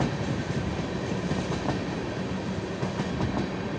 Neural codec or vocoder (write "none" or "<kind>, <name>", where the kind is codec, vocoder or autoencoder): none